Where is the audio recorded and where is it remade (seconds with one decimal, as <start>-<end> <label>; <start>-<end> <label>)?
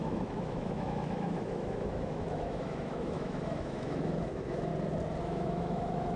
0.0-4.7 remade; 4.7-5.2 recorded; 5.2-6.2 remade